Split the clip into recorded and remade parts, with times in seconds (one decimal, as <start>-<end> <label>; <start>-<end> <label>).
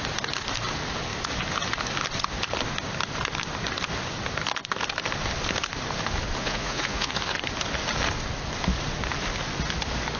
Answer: 0.0-6.4 recorded; 6.4-7.4 remade; 7.4-10.2 recorded